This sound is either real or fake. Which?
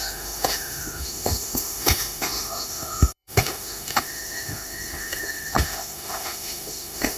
fake